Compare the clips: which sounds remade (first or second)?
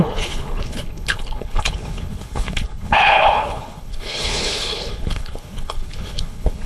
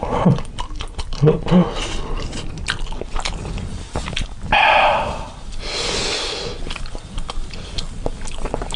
first